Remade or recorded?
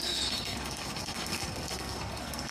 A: remade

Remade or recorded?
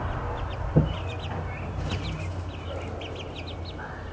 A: recorded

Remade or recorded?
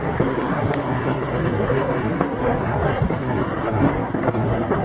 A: remade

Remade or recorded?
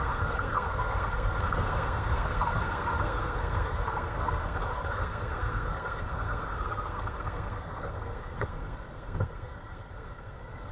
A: remade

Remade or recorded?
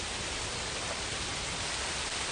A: recorded